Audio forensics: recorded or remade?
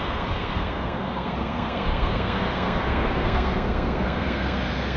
remade